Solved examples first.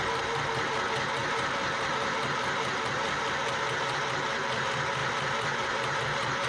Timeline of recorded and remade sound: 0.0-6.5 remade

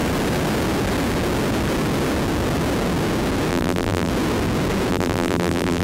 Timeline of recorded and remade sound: 0.0-3.5 recorded; 3.5-4.1 remade; 4.1-4.9 recorded; 4.9-5.8 remade

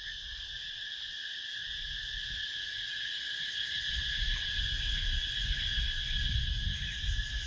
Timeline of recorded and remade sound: 0.0-7.5 recorded

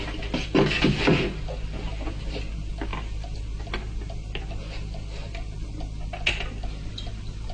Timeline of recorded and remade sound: 0.0-7.5 recorded

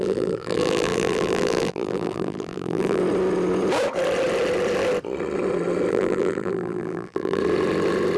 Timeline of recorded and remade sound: 0.0-3.0 remade; 3.0-5.9 recorded; 5.9-7.4 remade; 7.4-8.2 recorded

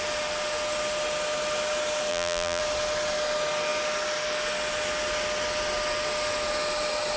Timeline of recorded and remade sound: 0.0-2.1 recorded; 2.1-2.6 remade; 2.6-7.2 recorded

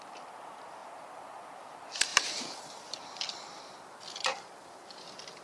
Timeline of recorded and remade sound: 0.0-2.1 recorded; 2.1-5.4 remade

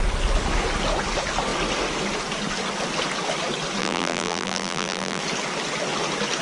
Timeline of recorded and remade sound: 0.0-3.8 recorded; 3.8-5.2 remade; 5.2-6.4 recorded